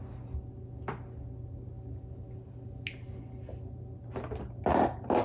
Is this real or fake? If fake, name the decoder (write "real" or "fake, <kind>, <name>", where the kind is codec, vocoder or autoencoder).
real